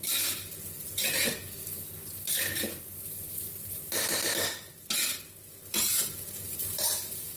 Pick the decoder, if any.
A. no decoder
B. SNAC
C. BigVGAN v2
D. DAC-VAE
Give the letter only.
A